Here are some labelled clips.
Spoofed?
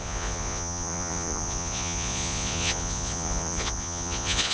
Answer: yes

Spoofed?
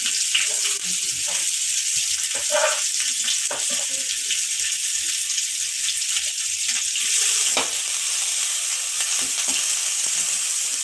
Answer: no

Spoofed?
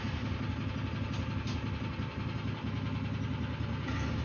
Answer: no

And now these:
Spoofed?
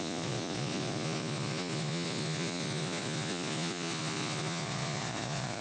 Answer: yes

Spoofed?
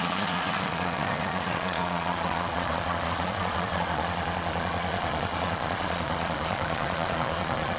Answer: yes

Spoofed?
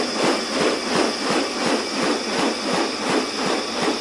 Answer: no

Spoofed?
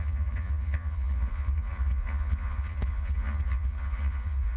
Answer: yes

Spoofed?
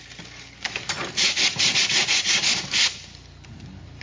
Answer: no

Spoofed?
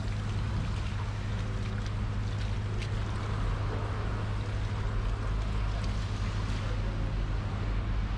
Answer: no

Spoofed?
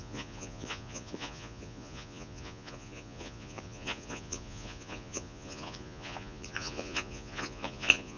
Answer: yes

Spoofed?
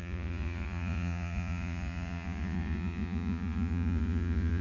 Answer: yes